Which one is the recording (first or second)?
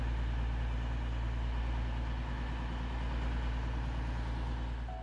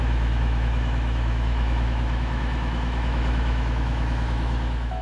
first